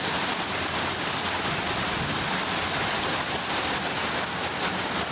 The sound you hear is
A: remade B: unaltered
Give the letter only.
B